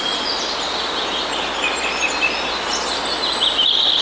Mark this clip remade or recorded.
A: recorded